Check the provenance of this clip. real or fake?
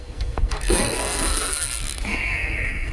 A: fake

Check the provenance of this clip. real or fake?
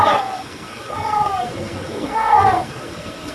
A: fake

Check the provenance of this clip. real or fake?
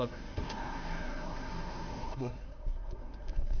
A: fake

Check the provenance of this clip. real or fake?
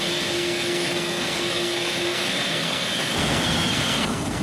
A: fake